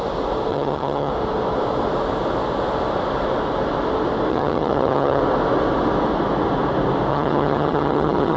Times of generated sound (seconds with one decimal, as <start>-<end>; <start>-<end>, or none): 0.5-1.1; 4.3-5.2; 7.1-8.4